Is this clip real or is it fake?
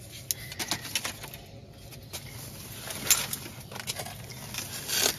real